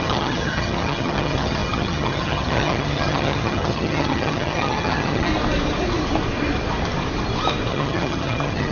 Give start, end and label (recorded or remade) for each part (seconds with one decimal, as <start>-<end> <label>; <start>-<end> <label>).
0.0-5.3 remade; 5.3-7.7 recorded; 7.7-8.7 remade